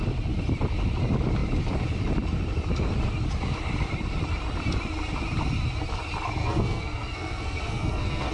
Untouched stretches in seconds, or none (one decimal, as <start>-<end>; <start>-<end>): 0.0-6.4